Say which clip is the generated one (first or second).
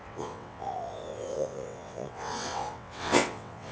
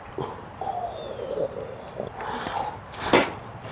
first